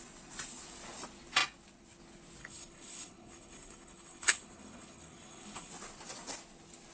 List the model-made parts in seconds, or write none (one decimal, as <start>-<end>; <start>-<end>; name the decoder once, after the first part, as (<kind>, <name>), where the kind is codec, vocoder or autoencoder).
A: 2.4-5.7 (codec, HILCodec)

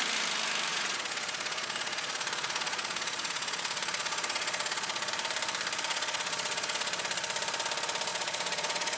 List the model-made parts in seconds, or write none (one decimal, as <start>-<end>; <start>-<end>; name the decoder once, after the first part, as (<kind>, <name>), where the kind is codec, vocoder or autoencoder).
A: 0.7-5.1 (vocoder, Vocos); 5.9-7.0; 8.1-9.0